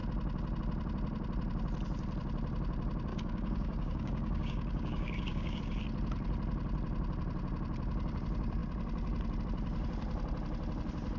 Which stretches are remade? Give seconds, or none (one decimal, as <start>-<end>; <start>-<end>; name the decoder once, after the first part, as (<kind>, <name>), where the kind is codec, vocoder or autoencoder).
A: 3.1-5.6 (codec, DAC)